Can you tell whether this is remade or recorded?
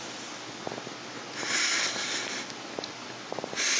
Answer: recorded